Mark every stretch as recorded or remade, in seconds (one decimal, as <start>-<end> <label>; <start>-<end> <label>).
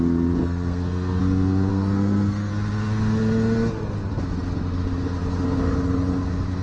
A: 0.0-0.4 recorded; 0.4-1.2 remade; 1.2-1.7 recorded; 1.7-2.5 remade; 2.5-6.6 recorded